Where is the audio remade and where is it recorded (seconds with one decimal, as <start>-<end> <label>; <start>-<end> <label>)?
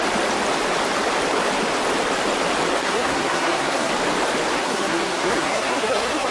0.0-2.8 recorded; 2.8-3.9 remade; 3.9-4.6 recorded; 4.6-6.3 remade